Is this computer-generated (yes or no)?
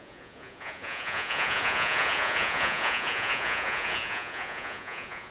yes